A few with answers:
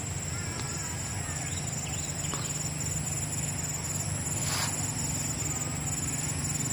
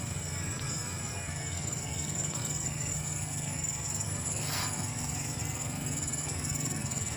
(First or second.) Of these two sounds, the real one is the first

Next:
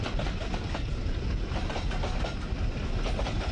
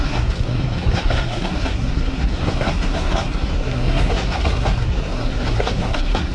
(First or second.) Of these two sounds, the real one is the first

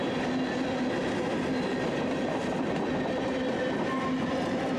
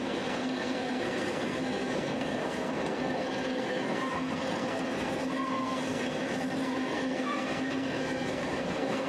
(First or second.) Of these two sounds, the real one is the first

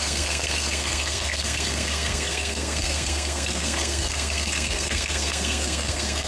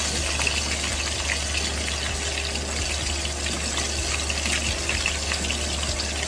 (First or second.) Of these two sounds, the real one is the second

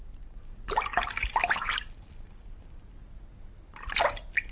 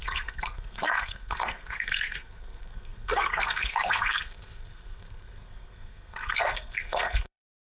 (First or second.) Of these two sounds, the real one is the first